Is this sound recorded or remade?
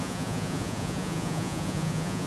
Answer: remade